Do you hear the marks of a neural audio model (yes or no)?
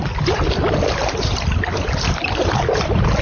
no